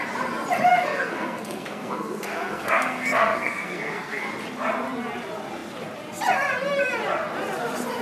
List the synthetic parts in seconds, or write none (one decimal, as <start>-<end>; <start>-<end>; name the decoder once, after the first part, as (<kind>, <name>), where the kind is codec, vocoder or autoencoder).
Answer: 0.7-4.3 (codec, SNAC)